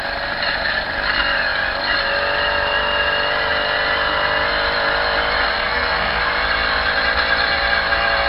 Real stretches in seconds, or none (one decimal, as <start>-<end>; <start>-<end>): 0.0-5.4; 6.2-8.3